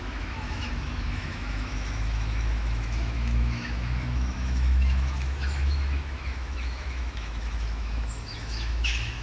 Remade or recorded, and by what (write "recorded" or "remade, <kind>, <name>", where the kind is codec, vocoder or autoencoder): remade, autoencoder, DAC-VAE